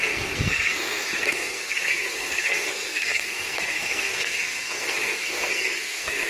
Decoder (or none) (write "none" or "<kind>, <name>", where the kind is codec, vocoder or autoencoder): codec, SNAC